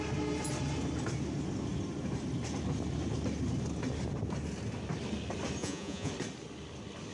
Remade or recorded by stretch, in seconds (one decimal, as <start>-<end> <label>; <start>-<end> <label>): 0.0-5.6 recorded; 5.6-6.1 remade; 6.1-7.1 recorded